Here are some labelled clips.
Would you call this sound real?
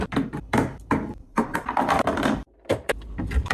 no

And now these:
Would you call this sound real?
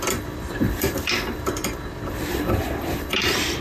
no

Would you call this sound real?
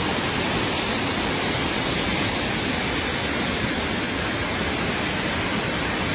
yes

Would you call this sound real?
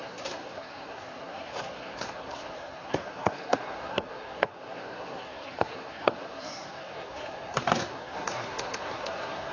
no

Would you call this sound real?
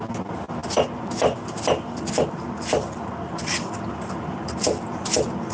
yes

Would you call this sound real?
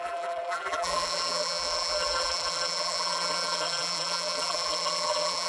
no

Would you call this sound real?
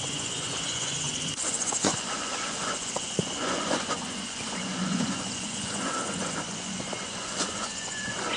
no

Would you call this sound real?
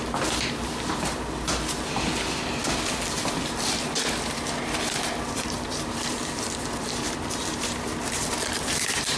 no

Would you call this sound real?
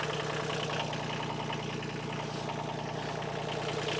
yes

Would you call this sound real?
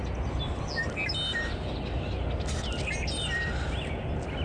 yes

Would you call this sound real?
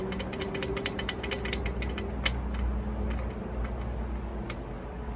yes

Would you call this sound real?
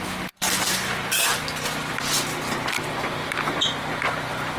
yes